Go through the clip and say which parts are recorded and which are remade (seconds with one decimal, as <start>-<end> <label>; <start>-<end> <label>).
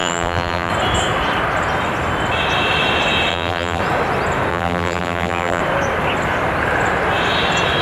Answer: 0.0-0.7 remade; 0.7-3.3 recorded; 3.3-3.8 remade; 3.8-4.5 recorded; 4.5-5.6 remade; 5.6-7.8 recorded